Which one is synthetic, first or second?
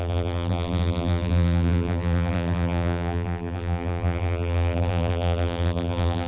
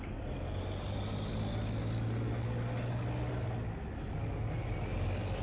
first